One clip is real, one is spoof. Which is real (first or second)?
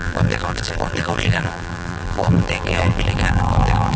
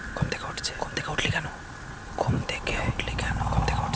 second